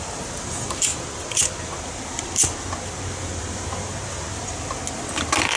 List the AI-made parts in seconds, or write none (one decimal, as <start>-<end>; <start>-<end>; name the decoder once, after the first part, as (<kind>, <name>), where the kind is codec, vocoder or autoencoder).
none